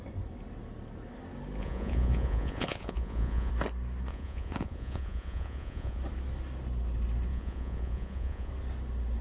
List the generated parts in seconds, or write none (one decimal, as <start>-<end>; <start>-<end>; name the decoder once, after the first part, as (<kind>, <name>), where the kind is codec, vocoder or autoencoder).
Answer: 1.6-3.5 (vocoder, Vocos); 4.1-6.0; 7.3-8.5